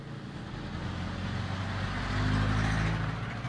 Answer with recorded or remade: recorded